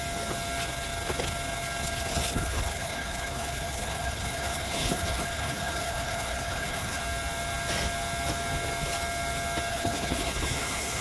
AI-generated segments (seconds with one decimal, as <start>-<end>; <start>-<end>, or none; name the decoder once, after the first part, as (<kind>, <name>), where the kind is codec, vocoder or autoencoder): 2.1-7.0 (codec, HILCodec); 9.7-11.0